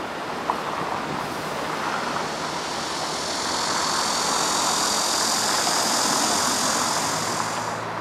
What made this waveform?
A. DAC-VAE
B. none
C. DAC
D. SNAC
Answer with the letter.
B